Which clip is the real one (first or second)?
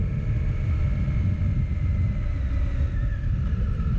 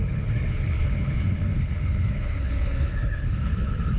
first